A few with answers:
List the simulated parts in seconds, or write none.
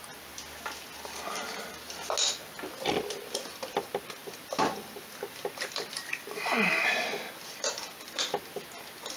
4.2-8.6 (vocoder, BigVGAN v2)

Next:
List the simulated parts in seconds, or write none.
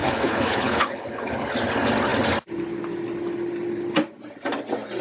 0.0-1.3 (codec, HILCodec)